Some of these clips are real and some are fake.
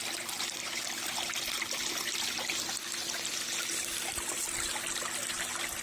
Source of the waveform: real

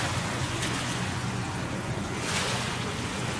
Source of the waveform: fake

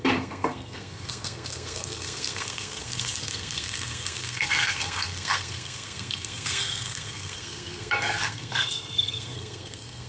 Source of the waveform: fake